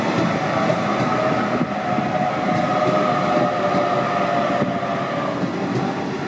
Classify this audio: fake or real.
real